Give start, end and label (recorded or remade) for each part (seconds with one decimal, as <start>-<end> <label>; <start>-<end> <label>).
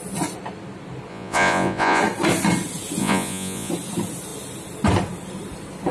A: 0.0-1.1 recorded; 1.1-2.0 remade; 2.0-3.0 recorded; 3.0-3.7 remade; 3.7-5.9 recorded